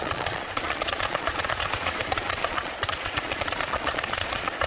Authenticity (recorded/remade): remade